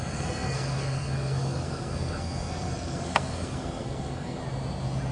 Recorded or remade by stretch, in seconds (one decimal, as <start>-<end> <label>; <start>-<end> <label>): 0.0-4.4 remade; 4.4-5.1 recorded